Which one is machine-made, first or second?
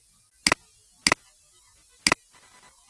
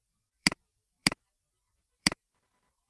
second